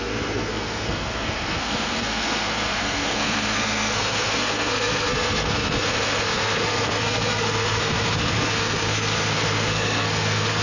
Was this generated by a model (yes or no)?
yes